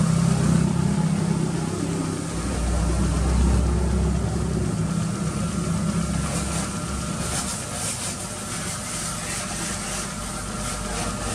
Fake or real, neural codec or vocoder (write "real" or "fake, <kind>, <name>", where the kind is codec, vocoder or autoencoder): real